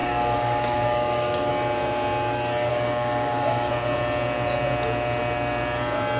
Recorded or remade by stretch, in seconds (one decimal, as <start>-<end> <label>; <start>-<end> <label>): 0.0-1.5 remade; 1.5-2.7 recorded; 2.7-3.7 remade; 3.7-6.2 recorded